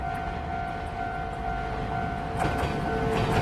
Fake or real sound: real